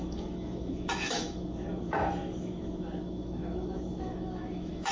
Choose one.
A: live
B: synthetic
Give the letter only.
B